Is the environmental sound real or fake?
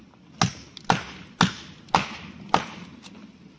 real